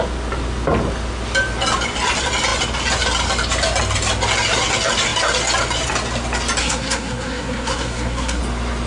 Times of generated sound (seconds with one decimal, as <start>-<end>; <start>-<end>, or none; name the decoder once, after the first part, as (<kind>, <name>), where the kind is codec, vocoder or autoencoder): 6.6-8.4 (codec, SNAC)